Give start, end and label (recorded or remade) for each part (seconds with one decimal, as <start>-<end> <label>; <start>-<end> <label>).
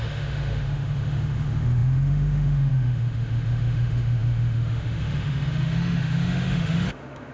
0.0-7.3 remade